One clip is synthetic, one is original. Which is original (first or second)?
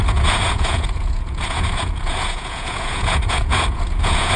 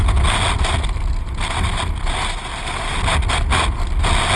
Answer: second